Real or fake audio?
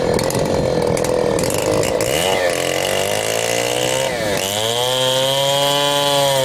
real